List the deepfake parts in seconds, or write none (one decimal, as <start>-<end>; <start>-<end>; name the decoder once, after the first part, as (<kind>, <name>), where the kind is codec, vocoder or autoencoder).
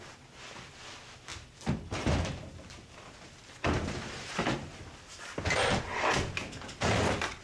1.3-4.8 (vocoder, BigVGAN v2)